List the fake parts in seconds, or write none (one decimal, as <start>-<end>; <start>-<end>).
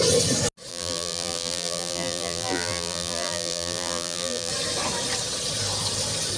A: 0.7-4.5